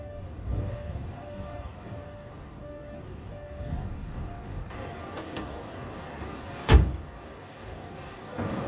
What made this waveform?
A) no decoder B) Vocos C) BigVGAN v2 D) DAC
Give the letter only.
D